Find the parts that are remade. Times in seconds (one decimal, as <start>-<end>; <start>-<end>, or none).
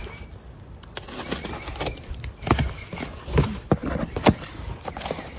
3.8-4.7